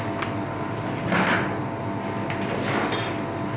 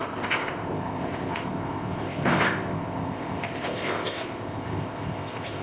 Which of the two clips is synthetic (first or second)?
second